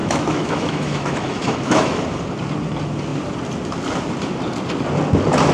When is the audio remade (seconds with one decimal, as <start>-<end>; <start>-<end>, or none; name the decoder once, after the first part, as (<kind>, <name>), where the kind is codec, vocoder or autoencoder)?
0.0-2.0 (autoencoder, DAC-VAE)